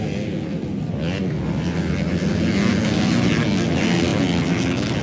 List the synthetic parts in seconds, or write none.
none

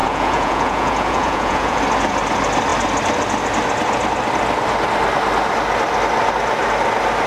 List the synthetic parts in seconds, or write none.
0.0-1.8 (vocoder, Vocos)